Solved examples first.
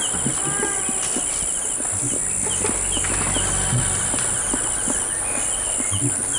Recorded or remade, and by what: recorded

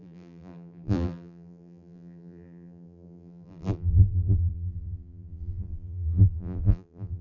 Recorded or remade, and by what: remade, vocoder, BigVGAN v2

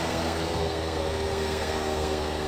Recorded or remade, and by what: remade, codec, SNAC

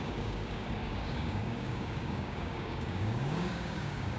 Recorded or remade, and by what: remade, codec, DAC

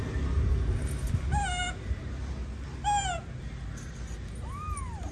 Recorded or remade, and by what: recorded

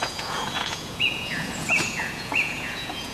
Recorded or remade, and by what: remade, vocoder, Vocos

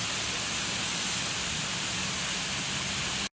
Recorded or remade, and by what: recorded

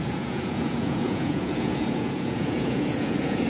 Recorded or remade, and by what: remade, vocoder, Vocos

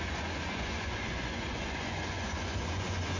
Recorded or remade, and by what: remade, vocoder, Vocos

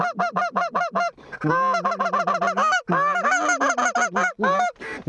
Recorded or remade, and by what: recorded